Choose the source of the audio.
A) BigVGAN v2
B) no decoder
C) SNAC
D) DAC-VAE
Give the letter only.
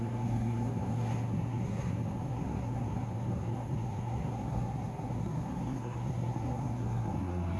C